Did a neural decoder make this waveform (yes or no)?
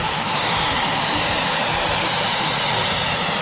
yes